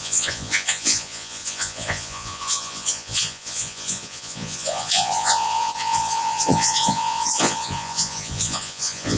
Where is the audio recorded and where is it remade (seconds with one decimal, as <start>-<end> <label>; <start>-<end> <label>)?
0.0-9.2 remade